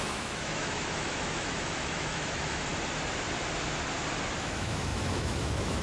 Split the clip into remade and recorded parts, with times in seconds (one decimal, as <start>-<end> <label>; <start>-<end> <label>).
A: 0.0-2.7 remade; 2.7-4.4 recorded; 4.4-5.8 remade

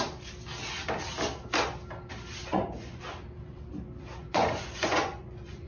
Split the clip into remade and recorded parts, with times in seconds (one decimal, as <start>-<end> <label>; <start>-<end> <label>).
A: 0.0-2.5 recorded; 2.5-3.0 remade; 3.0-4.2 recorded; 4.2-5.7 remade

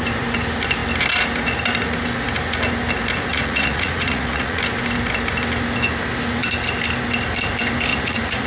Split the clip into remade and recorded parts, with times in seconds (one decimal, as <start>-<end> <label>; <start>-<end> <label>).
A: 0.0-3.3 recorded; 3.3-4.6 remade; 4.6-7.9 recorded; 7.9-8.5 remade

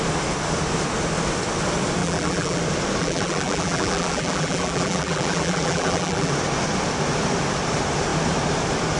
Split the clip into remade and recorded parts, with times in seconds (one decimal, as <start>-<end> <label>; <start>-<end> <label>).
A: 0.0-2.0 recorded; 2.0-2.6 remade; 2.6-3.0 recorded; 3.0-6.3 remade; 6.3-9.0 recorded

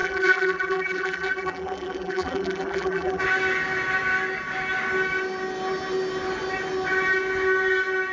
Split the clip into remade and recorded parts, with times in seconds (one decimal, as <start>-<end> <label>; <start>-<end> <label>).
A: 0.0-3.2 remade; 3.2-8.1 recorded

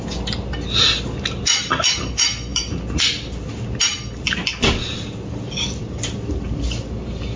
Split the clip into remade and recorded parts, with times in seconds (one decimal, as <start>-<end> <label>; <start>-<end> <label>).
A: 0.0-7.4 recorded